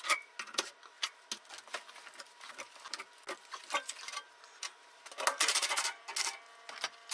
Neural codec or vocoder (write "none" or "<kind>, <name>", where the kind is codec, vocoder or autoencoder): none